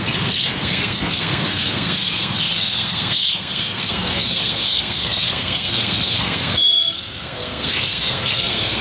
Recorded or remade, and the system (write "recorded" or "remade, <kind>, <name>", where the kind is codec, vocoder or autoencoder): remade, codec, SNAC